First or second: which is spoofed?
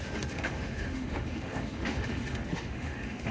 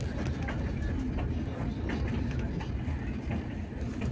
first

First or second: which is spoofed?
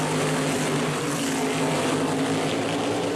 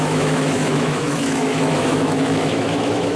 second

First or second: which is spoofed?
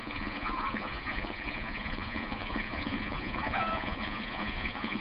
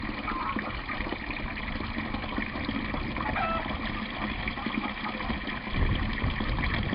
first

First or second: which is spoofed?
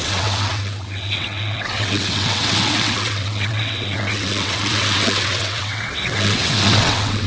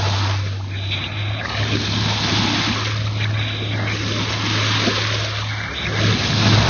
first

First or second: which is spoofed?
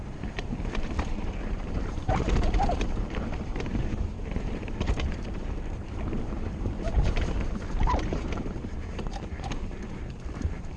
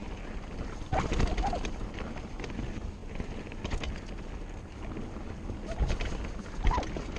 first